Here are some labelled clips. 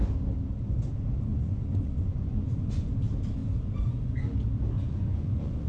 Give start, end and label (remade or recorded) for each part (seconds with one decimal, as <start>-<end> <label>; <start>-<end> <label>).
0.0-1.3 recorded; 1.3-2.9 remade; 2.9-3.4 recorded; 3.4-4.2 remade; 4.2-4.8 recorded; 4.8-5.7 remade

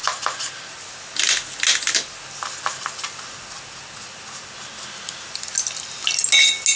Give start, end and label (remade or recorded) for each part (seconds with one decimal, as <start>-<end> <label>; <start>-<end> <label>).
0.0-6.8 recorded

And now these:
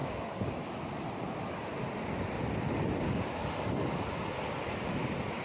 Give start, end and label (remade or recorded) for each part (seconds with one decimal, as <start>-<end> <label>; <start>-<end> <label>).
0.0-5.4 recorded

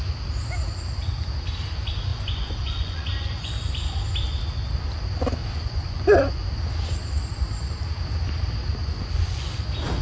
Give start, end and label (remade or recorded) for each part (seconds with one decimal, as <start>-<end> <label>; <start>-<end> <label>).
0.0-2.1 recorded; 2.1-3.5 remade; 3.5-5.4 recorded; 5.4-6.5 remade; 6.5-8.8 recorded; 8.8-9.5 remade; 9.5-10.0 recorded

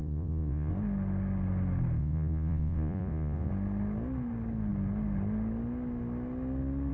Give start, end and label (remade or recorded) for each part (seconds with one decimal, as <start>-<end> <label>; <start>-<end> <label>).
0.0-0.7 remade; 0.7-2.0 recorded; 2.0-3.5 remade; 3.5-6.9 recorded